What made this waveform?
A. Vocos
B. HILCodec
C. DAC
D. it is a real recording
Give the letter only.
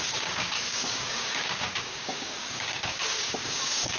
C